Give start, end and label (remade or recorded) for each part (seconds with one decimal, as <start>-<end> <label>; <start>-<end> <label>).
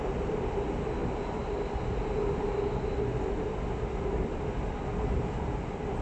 0.0-6.0 recorded